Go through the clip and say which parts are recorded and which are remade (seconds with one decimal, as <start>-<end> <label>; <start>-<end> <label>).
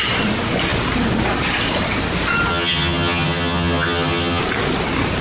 0.0-2.5 recorded; 2.5-4.4 remade; 4.4-5.2 recorded